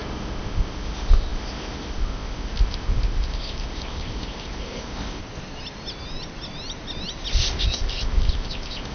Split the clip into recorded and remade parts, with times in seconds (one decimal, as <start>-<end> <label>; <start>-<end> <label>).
0.0-5.2 remade; 5.2-7.3 recorded; 7.3-8.9 remade